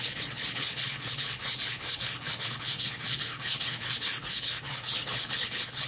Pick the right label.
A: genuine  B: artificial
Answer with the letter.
B